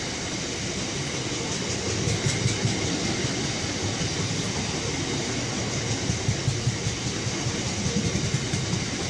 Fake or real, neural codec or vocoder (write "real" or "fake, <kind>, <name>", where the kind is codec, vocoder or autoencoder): real